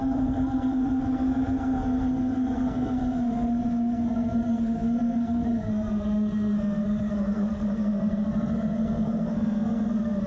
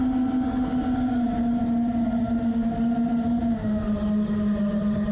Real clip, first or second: second